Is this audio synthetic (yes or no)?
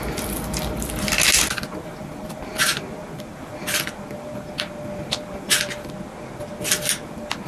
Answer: no